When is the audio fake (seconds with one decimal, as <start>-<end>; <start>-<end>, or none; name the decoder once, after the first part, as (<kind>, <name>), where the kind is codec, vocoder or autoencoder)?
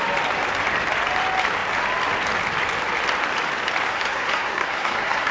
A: 3.9-5.3 (codec, SNAC)